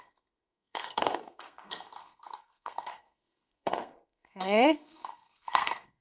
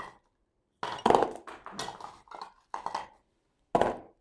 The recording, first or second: second